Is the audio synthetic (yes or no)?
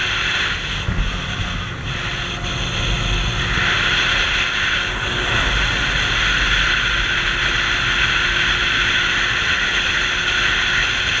no